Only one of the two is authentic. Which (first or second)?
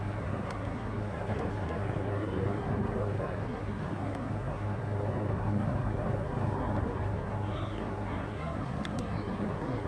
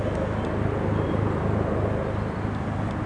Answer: second